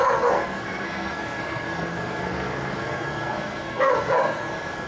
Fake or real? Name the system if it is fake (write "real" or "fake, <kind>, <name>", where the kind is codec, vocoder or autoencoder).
fake, codec, SNAC